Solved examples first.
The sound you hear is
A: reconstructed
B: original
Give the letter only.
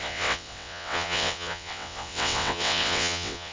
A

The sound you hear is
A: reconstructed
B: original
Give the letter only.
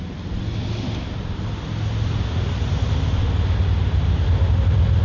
B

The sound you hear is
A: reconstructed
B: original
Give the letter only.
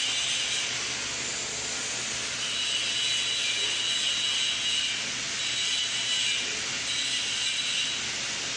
B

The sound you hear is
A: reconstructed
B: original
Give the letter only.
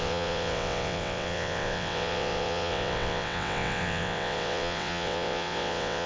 A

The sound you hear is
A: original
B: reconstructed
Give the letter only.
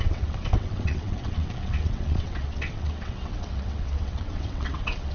B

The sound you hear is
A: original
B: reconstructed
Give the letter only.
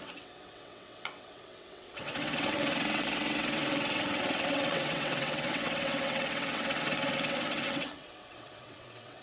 B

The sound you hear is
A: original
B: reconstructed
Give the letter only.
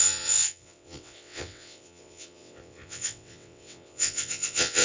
B